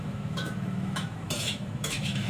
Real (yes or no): no